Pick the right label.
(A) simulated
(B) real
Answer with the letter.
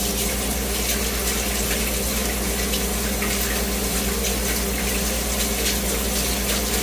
B